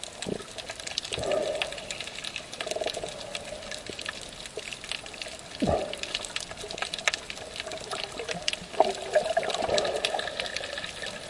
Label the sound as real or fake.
real